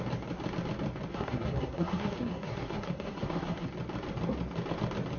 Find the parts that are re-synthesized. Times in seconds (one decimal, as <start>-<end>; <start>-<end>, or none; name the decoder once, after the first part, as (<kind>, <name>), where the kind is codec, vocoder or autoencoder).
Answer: 1.1-3.7 (codec, SNAC)